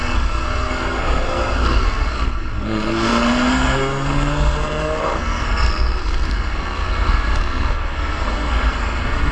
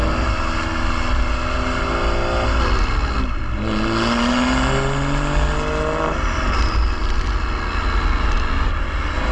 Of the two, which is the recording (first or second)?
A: second